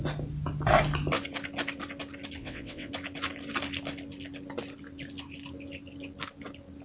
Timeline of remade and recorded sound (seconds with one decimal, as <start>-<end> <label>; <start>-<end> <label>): 0.0-2.4 recorded; 2.4-2.9 remade; 2.9-6.8 recorded